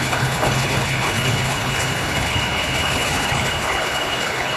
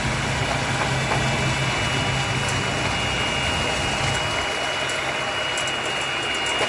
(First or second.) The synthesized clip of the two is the first